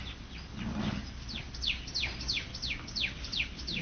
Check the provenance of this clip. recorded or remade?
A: recorded